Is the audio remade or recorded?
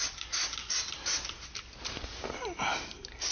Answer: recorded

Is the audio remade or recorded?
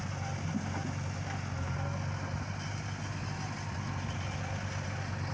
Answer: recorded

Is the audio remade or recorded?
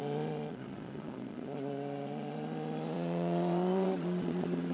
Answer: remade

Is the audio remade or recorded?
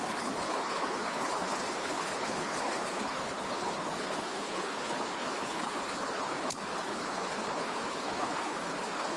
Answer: remade